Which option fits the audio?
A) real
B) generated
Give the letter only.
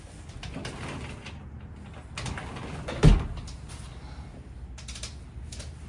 A